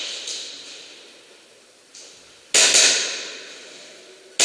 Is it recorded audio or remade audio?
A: recorded